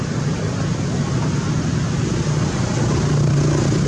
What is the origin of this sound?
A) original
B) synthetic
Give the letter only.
A